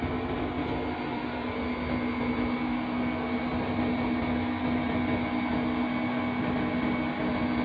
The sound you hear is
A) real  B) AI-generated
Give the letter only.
A